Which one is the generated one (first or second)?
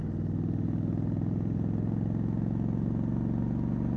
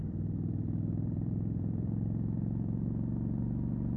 second